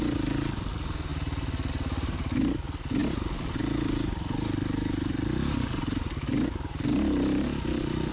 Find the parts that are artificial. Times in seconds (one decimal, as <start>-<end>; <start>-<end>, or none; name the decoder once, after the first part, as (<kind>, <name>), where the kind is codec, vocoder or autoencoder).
none